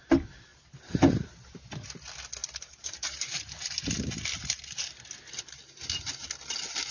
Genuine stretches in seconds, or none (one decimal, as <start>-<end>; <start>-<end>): 0.0-0.5; 1.7-2.4; 5.0-6.9